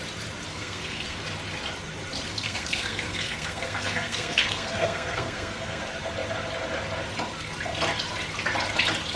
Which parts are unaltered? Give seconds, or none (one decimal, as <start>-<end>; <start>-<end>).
0.0-0.5; 1.2-2.3; 5.8-9.2